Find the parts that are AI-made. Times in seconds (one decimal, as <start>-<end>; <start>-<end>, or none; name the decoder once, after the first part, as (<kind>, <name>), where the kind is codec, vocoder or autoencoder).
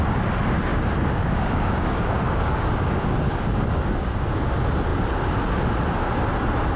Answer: 0.7-4.5 (codec, DAC)